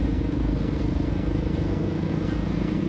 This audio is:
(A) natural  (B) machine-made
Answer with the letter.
B